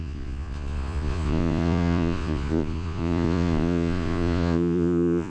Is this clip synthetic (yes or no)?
yes